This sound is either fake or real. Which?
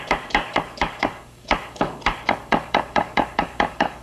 fake